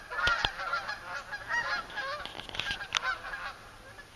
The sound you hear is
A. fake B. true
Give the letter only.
B